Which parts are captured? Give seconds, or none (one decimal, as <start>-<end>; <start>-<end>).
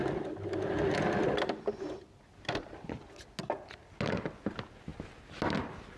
0.0-6.0